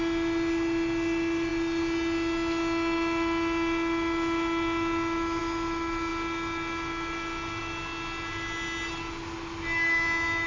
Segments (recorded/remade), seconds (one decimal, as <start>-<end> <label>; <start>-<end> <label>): 0.0-10.5 recorded

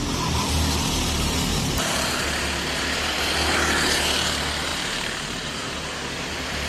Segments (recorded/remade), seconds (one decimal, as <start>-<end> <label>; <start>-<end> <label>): 0.0-1.5 recorded; 1.5-2.1 remade; 2.1-4.7 recorded; 4.7-6.7 remade

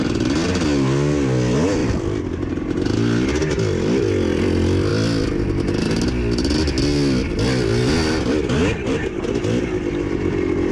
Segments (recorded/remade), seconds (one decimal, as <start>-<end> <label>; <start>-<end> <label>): 0.0-1.8 recorded; 1.8-2.5 remade; 2.5-10.7 recorded